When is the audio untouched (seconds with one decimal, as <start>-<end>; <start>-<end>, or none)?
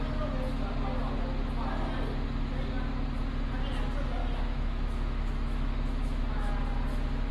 0.0-4.2; 6.5-7.3